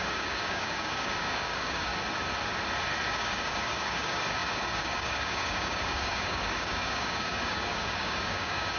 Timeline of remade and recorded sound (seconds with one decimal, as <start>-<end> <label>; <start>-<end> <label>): 0.0-1.9 remade; 1.9-3.1 recorded; 3.1-8.8 remade